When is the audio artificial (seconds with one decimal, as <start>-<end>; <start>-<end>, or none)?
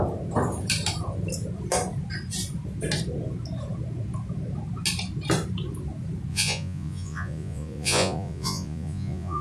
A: 6.3-9.4